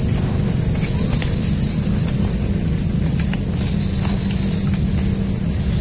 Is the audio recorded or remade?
recorded